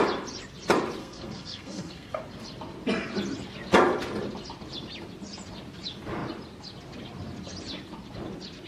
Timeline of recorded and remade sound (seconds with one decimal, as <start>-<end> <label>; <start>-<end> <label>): 0.0-1.0 recorded; 1.0-2.2 remade; 2.2-8.7 recorded

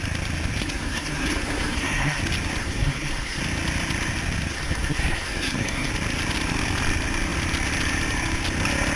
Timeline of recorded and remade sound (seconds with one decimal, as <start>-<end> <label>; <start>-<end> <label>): 0.0-0.6 recorded; 0.6-2.2 remade; 2.2-2.6 recorded; 2.6-3.4 remade; 3.4-4.5 recorded; 4.5-5.9 remade; 5.9-9.0 recorded

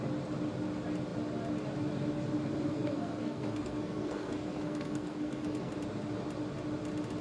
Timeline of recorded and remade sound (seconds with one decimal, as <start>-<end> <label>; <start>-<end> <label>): 0.0-2.7 recorded; 2.7-5.7 remade; 5.7-7.2 recorded

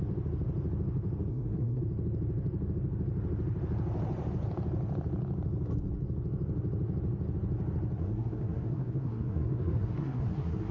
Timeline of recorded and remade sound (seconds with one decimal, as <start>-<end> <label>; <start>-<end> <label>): 0.0-1.3 recorded; 1.3-1.8 remade; 1.8-8.0 recorded; 8.0-10.7 remade